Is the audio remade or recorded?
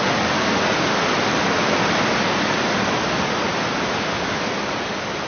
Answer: recorded